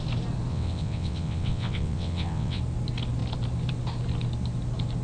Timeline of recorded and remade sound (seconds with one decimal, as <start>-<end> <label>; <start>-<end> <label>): 0.0-0.5 recorded; 0.5-2.6 remade; 2.6-5.0 recorded